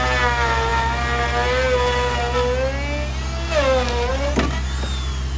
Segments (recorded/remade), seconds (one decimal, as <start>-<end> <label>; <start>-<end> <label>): 0.0-5.4 recorded